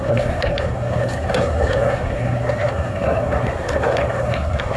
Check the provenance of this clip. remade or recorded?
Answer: remade